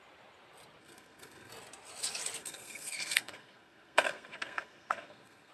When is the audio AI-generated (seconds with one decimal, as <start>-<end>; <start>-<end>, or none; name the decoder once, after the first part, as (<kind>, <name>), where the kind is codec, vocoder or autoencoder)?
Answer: 0.8-1.5 (codec, SNAC); 2.4-5.5